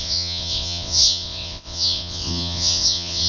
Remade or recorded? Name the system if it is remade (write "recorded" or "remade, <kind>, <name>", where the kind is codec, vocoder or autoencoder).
remade, vocoder, WaveNeXt